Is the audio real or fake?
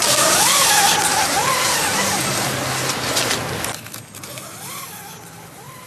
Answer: real